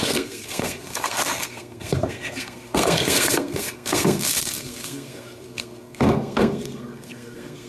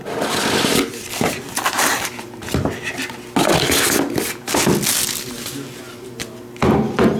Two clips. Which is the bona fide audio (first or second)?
second